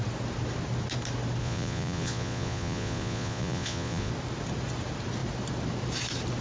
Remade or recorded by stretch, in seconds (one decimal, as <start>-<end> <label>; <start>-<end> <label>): 0.0-1.4 recorded; 1.4-4.1 remade; 4.1-6.4 recorded